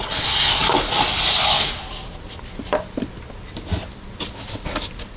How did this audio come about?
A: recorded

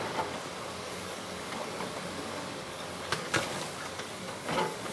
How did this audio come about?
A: remade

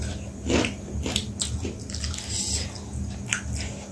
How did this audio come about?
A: recorded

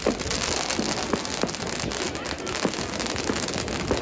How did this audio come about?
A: recorded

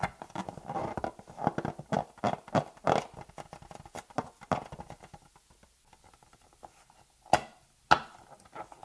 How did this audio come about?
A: recorded